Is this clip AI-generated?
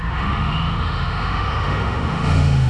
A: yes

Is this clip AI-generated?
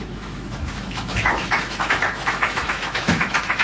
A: yes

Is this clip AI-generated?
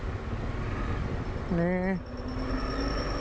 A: no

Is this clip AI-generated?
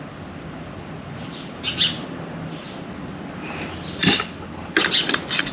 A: no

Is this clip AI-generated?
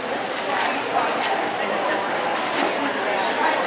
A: no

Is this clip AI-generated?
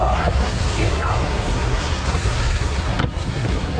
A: yes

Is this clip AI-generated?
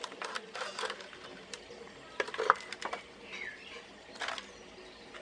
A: no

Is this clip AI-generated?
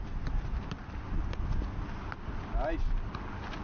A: no